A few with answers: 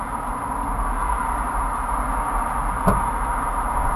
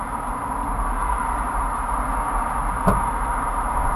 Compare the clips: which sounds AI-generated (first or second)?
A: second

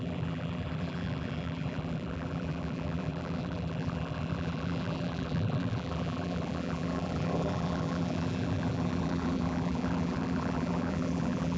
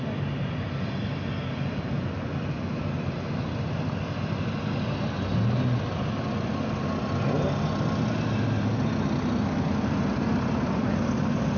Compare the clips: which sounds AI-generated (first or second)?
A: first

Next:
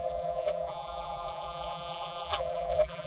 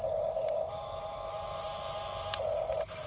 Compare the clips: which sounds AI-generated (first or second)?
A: first